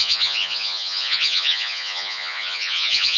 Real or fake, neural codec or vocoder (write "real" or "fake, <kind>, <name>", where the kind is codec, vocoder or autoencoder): fake, vocoder, Vocos